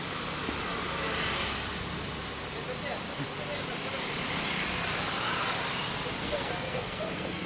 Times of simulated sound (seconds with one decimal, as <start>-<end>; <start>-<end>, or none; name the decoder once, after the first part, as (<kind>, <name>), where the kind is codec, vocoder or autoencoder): 6.2-7.5 (codec, SNAC)